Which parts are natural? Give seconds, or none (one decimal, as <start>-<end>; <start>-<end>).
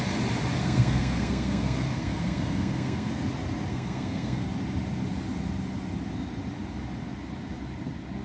0.0-0.6; 3.1-3.7; 4.4-8.2